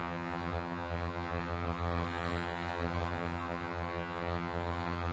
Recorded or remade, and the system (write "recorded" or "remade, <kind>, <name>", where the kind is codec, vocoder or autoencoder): remade, vocoder, HiFi-GAN